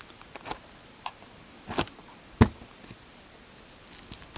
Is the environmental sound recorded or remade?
recorded